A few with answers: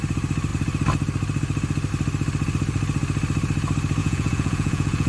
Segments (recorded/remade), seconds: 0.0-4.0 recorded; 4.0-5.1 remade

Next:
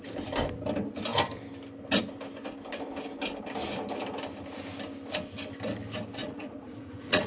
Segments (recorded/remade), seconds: 0.0-6.2 recorded; 6.2-7.3 remade

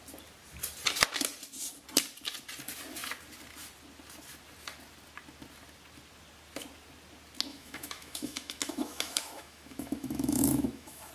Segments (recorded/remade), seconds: 0.0-7.5 recorded; 7.5-11.1 remade

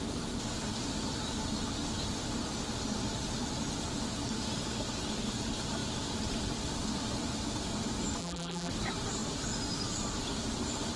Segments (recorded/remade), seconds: 0.0-8.2 recorded; 8.2-8.7 remade; 8.7-11.0 recorded

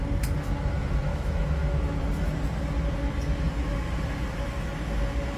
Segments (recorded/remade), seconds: 0.0-1.1 recorded; 1.1-2.0 remade; 2.0-5.4 recorded

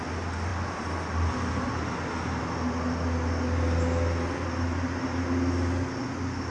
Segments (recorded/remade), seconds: 0.0-6.5 recorded